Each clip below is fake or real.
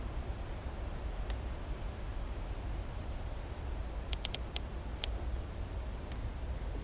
real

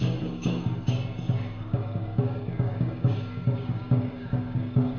fake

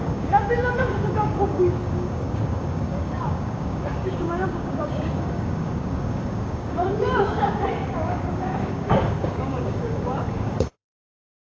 fake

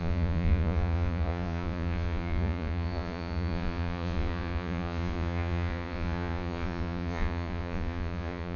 fake